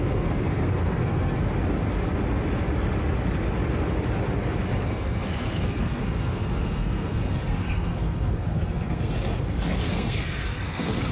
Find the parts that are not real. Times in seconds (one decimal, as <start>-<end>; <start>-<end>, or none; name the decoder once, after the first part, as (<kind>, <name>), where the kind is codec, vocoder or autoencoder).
0.0-1.4 (codec, SNAC); 4.8-11.1